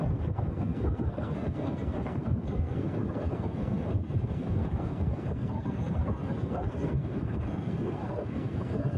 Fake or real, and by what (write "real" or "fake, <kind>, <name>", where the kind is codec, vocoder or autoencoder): fake, codec, SNAC